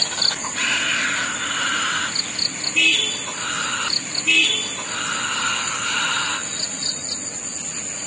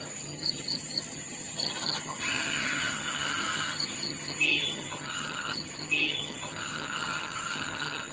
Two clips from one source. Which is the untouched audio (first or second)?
first